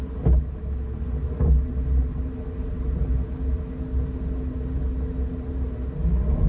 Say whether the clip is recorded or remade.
recorded